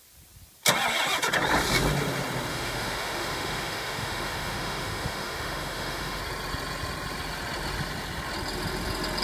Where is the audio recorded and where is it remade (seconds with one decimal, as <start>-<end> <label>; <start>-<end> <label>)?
0.0-2.5 recorded; 2.5-6.2 remade; 6.2-9.2 recorded